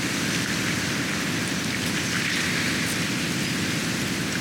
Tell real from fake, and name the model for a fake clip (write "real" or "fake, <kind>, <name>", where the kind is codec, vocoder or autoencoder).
real